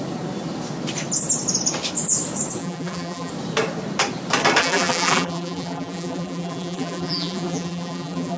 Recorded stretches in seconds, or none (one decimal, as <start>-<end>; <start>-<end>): 0.0-2.6; 3.3-4.6